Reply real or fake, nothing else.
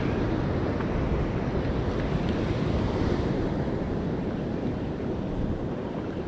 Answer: real